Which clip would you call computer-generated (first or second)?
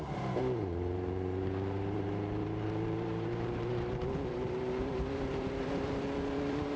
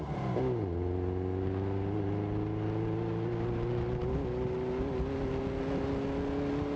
first